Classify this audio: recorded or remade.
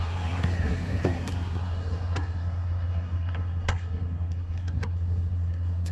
remade